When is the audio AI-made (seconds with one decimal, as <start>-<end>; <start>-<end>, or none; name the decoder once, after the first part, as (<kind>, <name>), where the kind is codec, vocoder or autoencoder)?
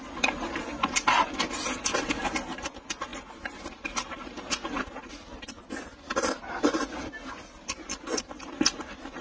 none